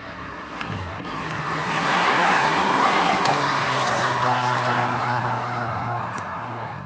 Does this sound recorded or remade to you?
remade